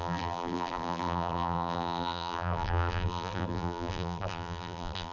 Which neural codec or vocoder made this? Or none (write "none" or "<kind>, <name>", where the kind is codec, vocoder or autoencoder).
vocoder, BigVGAN v2